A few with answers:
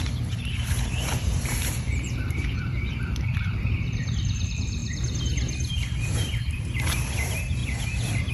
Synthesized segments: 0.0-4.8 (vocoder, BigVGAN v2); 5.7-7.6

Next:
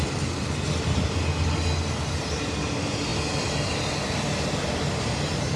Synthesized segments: none

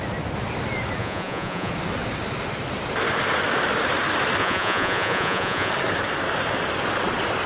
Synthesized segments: 1.0-1.7 (vocoder, Vocos); 4.4-5.7

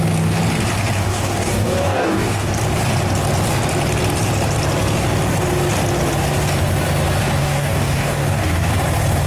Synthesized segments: 1.1-2.5 (codec, DAC); 7.4-8.7

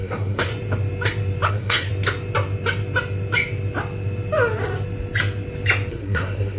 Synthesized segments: 0.0-0.5 (codec, SNAC); 1.5-1.9; 5.9-6.6